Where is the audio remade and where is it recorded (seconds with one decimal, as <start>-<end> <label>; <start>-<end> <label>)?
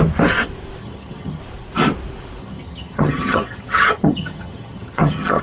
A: 0.0-0.8 recorded; 0.8-1.4 remade; 1.4-2.4 recorded; 2.4-5.4 remade